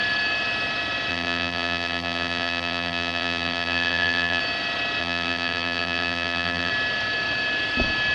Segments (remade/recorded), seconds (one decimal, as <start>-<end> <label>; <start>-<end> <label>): 0.0-1.1 recorded; 1.1-4.4 remade; 4.4-5.0 recorded; 5.0-6.7 remade; 6.7-8.1 recorded